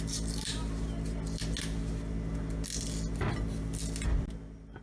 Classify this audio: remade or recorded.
recorded